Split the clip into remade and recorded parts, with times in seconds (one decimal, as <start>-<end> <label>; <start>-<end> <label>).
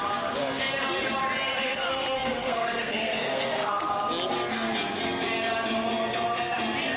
0.0-1.6 recorded; 1.6-3.9 remade; 3.9-7.0 recorded